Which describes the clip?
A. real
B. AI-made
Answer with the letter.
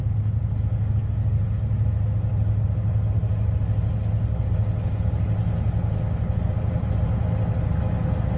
A